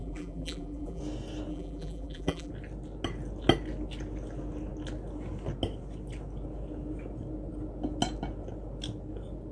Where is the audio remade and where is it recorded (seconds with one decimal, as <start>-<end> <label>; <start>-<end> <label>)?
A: 0.0-1.0 remade; 1.0-1.5 recorded; 1.5-2.5 remade; 2.5-9.5 recorded